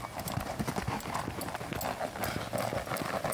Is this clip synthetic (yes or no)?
no